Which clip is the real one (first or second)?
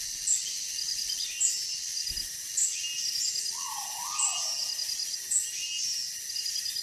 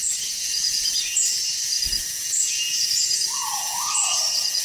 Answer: first